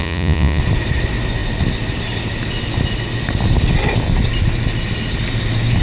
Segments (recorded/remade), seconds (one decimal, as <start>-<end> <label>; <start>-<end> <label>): 0.0-0.6 remade; 0.6-5.8 recorded